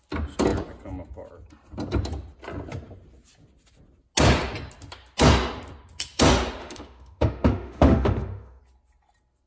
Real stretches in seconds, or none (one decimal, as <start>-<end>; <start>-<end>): 0.0-6.6; 8.6-9.5

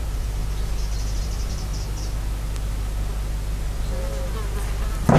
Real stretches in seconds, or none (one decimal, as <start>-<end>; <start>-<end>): 0.4-1.2; 1.7-4.8

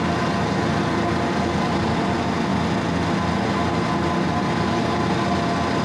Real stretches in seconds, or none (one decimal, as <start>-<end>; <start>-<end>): 0.0-5.8

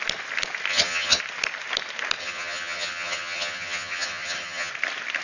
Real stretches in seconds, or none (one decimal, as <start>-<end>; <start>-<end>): 0.0-0.7; 1.2-2.2; 4.7-5.2

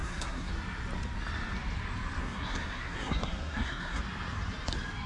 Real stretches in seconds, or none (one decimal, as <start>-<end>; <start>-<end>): 0.5-2.2; 4.0-5.1

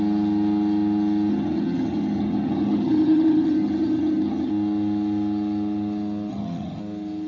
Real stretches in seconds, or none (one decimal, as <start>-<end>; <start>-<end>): 0.0-1.3; 4.5-6.3; 6.8-7.3

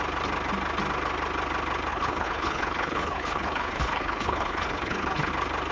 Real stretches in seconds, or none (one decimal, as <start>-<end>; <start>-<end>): 0.0-1.9; 5.3-5.7

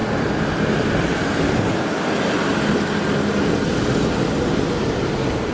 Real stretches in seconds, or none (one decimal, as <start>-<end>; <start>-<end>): 0.0-5.5